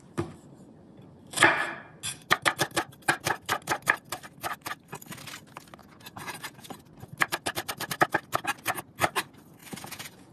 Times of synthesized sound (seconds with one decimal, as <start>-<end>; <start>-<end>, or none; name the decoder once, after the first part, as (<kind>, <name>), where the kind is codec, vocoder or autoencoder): 5.8-6.7 (vocoder, Vocos); 9.6-10.3